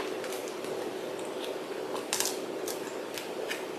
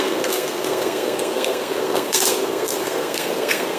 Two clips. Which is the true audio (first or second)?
first